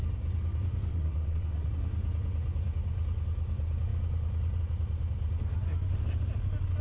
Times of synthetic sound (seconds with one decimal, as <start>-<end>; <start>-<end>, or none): 0.9-1.7